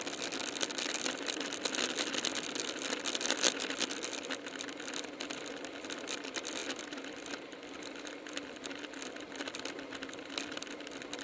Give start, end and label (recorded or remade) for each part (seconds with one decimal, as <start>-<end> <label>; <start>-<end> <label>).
0.0-11.2 recorded